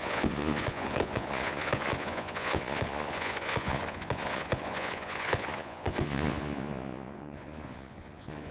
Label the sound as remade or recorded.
remade